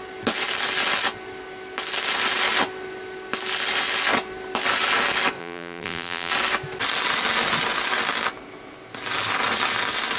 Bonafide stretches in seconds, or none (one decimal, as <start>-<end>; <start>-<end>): 0.0-5.4; 6.3-10.2